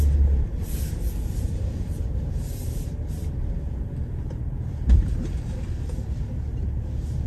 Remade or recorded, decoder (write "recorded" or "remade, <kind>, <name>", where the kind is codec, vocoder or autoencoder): remade, vocoder, BigVGAN v2